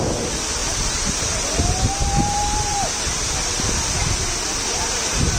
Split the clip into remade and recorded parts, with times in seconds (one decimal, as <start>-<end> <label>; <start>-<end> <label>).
0.0-0.6 recorded; 0.6-2.9 remade; 2.9-4.5 recorded; 4.5-5.4 remade